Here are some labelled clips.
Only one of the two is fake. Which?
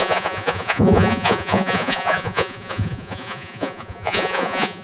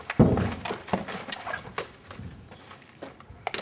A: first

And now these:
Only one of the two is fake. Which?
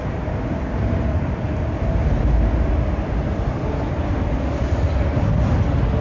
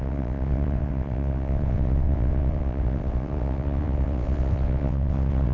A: second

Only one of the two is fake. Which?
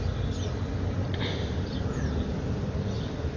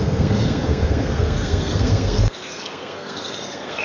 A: second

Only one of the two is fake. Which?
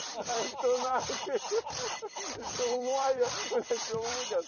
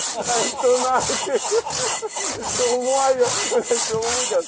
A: first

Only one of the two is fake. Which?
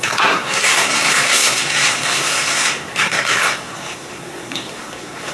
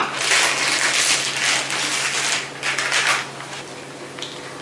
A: first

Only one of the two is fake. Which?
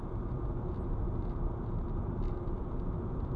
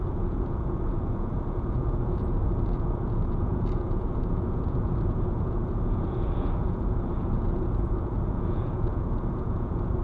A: second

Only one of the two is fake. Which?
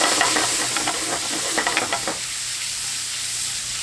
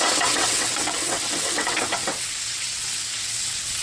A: second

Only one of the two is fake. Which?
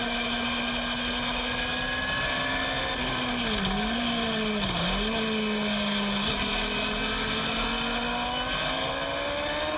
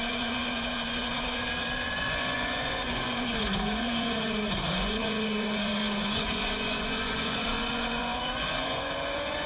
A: second